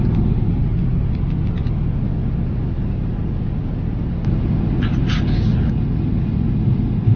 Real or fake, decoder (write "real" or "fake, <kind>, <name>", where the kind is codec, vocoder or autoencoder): real